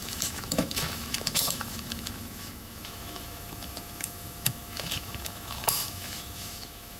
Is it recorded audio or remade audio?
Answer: remade